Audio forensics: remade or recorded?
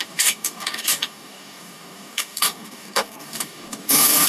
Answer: remade